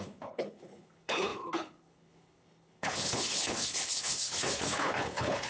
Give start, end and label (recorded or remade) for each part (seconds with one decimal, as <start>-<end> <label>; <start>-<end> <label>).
0.0-5.5 remade